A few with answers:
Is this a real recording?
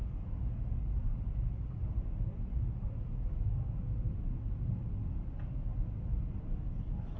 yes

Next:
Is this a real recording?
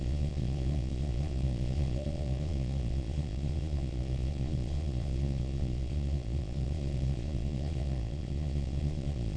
no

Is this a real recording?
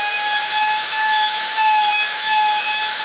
no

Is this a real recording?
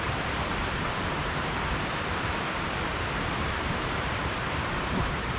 no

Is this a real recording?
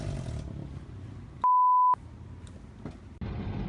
yes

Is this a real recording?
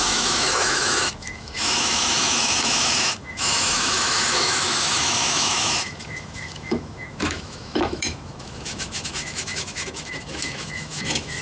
no